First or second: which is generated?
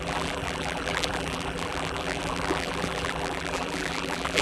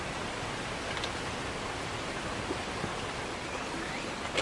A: first